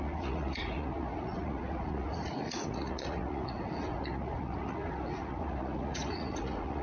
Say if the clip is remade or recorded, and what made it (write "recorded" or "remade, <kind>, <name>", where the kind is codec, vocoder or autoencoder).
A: remade, vocoder, Vocos